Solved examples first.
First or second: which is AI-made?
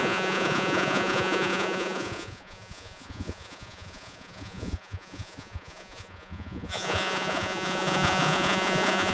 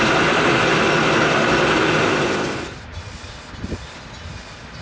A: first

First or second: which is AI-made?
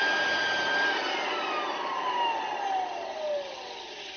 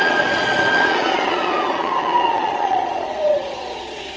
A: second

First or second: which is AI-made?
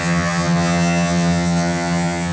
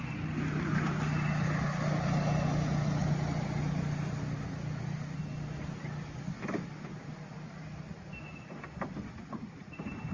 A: first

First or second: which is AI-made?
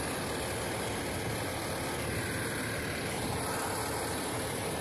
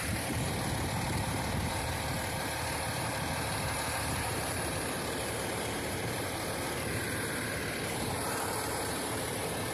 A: second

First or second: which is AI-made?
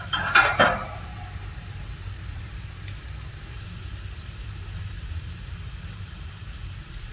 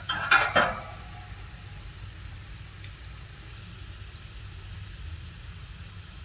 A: first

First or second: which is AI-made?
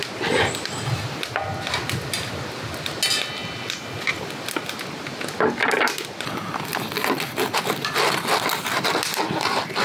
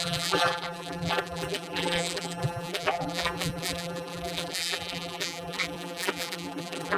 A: second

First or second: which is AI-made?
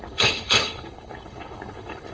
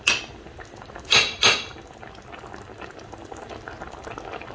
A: first